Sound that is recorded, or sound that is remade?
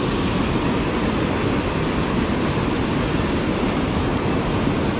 recorded